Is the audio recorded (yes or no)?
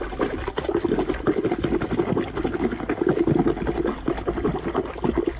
yes